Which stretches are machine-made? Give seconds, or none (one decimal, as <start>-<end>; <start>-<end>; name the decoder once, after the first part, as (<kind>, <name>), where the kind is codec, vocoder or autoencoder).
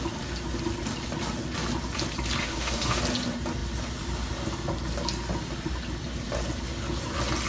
2.4-3.0 (autoencoder, DAC-VAE)